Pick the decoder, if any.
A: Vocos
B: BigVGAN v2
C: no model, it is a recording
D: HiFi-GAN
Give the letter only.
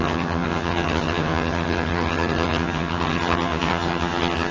D